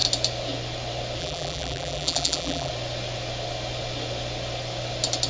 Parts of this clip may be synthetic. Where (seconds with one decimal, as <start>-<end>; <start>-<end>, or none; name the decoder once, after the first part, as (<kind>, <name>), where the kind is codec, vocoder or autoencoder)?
1.2-2.7 (vocoder, BigVGAN v2)